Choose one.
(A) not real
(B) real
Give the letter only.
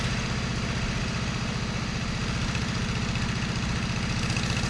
B